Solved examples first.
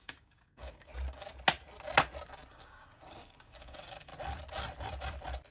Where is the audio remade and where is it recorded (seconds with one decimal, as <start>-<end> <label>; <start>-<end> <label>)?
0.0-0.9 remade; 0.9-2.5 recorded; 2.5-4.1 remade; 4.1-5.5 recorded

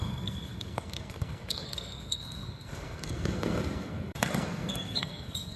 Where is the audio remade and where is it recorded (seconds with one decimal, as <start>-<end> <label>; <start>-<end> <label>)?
0.0-5.6 remade

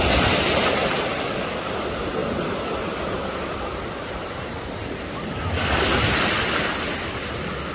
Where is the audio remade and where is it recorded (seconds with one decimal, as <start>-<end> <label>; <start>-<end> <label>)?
0.0-7.7 recorded

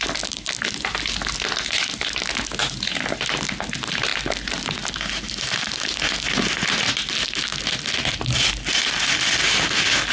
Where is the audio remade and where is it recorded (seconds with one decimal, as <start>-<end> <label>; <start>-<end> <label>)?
0.0-10.1 recorded

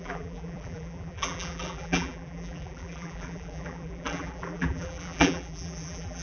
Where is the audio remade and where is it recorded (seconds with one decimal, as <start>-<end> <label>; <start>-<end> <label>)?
0.0-6.2 remade

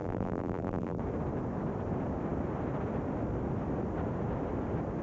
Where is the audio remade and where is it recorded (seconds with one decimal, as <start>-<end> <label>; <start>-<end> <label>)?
0.0-1.0 remade; 1.0-5.0 recorded

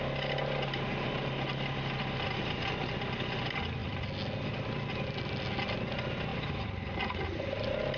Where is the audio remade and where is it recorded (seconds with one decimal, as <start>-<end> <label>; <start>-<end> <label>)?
0.0-6.3 recorded; 6.3-7.0 remade; 7.0-8.0 recorded